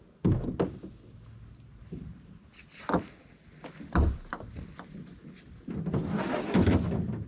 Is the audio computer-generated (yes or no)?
no